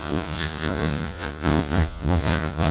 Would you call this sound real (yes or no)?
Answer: no